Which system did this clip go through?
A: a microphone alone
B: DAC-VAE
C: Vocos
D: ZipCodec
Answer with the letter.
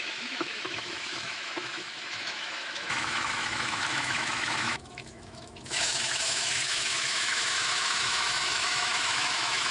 B